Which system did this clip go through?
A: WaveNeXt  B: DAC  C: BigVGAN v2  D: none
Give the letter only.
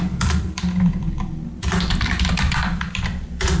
C